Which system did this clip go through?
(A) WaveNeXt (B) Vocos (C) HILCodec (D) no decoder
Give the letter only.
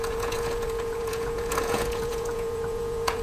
B